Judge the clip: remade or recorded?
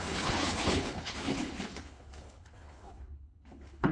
remade